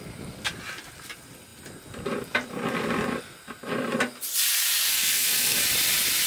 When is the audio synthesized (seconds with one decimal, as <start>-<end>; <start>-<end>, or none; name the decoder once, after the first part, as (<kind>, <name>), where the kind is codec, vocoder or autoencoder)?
4.9-5.6 (codec, SNAC)